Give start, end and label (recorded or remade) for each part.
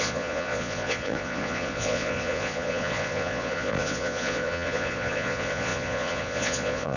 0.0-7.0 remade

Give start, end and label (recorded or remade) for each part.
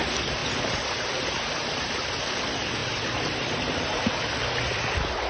0.0-0.4 recorded; 0.4-1.5 remade; 1.5-2.8 recorded; 2.8-4.3 remade; 4.3-5.3 recorded